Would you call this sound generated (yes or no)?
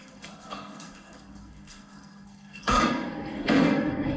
yes